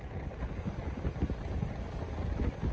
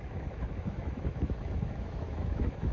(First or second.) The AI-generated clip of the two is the second